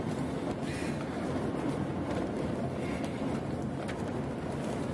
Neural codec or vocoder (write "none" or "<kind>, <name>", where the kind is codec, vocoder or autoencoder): none